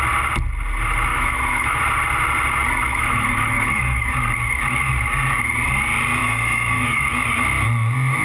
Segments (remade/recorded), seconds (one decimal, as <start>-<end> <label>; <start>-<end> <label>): 0.0-1.1 recorded; 1.1-1.8 remade; 1.8-2.9 recorded; 2.9-4.1 remade; 4.1-6.2 recorded; 6.2-7.0 remade; 7.0-8.2 recorded